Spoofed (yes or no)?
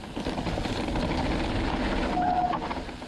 no